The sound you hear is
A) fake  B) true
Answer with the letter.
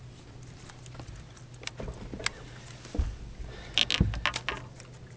B